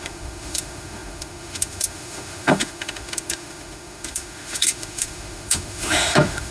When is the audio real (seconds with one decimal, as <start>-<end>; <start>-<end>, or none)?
none